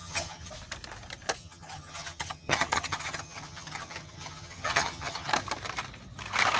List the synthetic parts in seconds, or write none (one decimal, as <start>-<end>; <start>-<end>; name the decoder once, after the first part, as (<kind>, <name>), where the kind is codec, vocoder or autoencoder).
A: 0.0-0.5 (vocoder, HiFi-GAN); 1.4-5.3